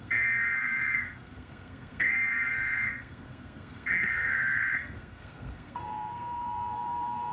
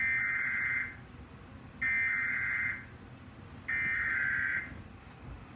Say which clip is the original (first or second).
second